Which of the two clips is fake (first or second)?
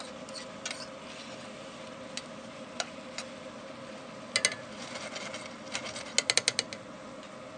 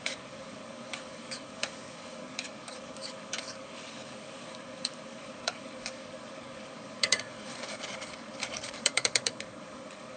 second